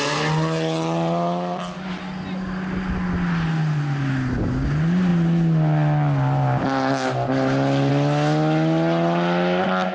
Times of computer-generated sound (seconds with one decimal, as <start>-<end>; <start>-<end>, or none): none